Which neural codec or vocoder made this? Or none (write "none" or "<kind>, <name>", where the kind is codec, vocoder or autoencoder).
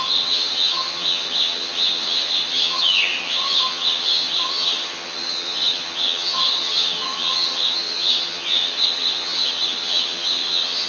vocoder, HiFi-GAN